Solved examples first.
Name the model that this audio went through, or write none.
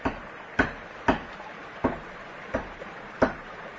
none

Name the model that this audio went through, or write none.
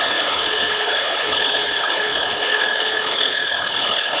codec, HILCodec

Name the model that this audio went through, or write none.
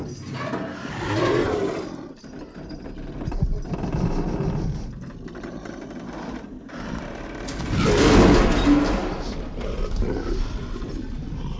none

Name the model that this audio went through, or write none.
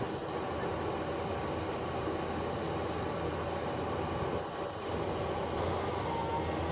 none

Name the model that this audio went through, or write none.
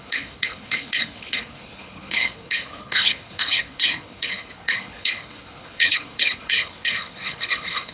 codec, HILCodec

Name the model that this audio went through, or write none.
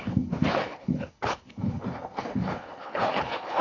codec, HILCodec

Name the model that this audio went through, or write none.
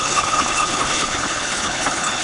codec, HILCodec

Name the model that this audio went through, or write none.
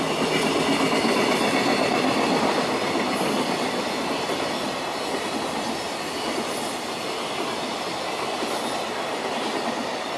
none